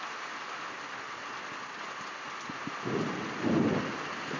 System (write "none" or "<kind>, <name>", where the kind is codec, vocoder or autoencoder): none